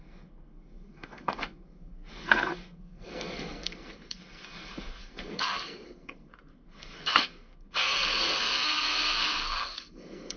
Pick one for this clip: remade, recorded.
remade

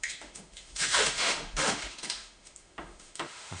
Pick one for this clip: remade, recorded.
remade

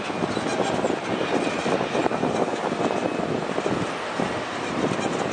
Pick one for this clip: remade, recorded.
recorded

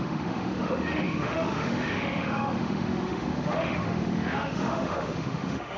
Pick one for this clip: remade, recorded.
remade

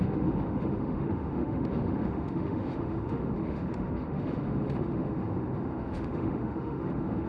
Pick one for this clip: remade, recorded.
remade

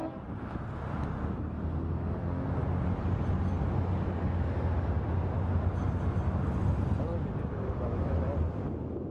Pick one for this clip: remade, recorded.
recorded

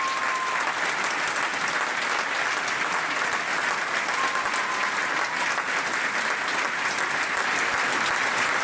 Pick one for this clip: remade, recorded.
recorded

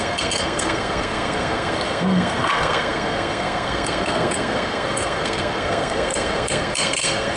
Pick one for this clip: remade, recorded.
remade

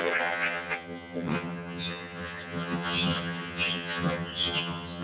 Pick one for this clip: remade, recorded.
remade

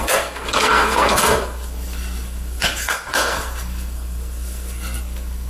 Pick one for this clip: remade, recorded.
remade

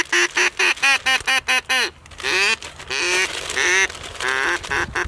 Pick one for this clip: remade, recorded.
recorded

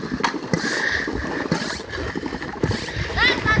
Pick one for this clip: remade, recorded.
recorded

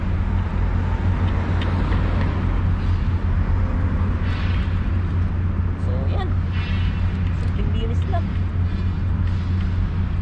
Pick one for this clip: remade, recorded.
recorded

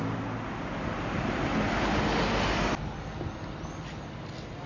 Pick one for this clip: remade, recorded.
recorded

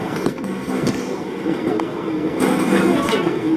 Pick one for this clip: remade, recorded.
remade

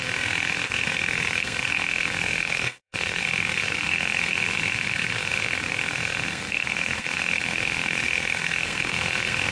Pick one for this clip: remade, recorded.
remade